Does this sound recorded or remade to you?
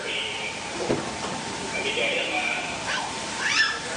remade